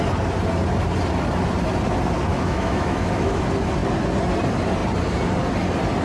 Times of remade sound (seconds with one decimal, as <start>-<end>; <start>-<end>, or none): 2.3-3.4